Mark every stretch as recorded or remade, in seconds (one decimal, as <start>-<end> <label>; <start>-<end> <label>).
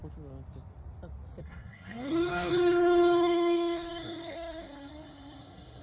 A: 0.0-1.4 recorded; 1.4-5.8 remade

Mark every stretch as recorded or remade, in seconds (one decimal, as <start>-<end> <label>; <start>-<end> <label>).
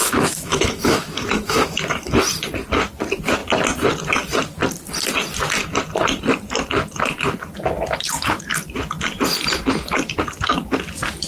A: 0.0-2.2 remade; 2.2-11.3 recorded